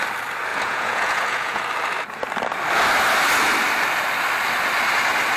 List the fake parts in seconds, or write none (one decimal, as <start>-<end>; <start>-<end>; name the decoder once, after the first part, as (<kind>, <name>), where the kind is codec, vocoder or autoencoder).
0.5-1.6 (vocoder, Vocos)